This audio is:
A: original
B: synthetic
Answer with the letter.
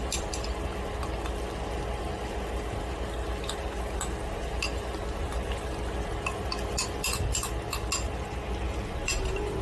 A